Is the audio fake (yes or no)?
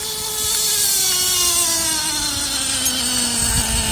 no